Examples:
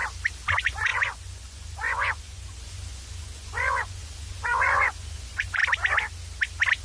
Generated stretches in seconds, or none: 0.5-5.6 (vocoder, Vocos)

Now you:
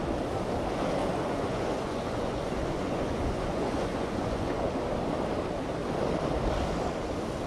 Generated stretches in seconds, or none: 1.0-4.7 (vocoder, Vocos)

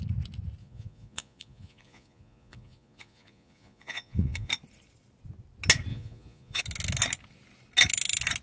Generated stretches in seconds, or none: 0.6-4.5 (vocoder, Vocos); 5.9-6.6